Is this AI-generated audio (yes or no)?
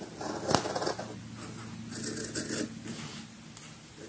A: no